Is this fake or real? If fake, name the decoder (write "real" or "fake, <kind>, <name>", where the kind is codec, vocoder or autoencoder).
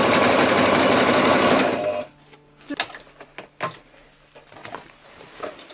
real